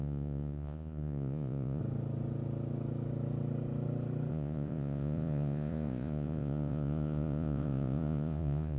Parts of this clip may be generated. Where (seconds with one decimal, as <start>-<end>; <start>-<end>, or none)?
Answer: 0.0-1.8; 4.3-8.8